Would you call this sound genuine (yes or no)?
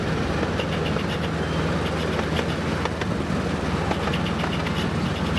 yes